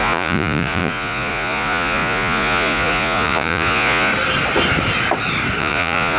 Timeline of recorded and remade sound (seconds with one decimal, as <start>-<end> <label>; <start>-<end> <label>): 0.0-4.1 remade; 4.1-5.6 recorded; 5.6-6.2 remade